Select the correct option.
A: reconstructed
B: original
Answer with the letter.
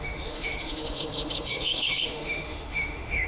A